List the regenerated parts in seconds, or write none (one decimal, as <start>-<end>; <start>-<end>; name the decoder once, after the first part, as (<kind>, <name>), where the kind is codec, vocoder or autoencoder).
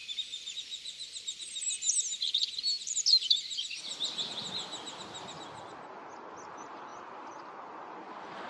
none